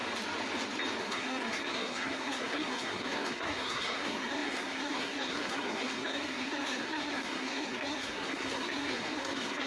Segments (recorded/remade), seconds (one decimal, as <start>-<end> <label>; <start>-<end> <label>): 0.0-1.0 recorded; 1.0-9.7 remade